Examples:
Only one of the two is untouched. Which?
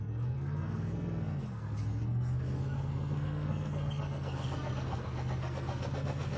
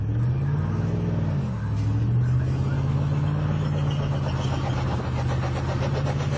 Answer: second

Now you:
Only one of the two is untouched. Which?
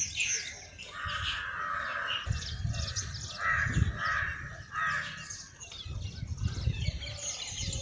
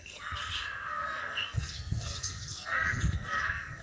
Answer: first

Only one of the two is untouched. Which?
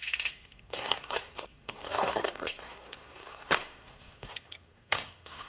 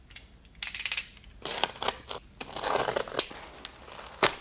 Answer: second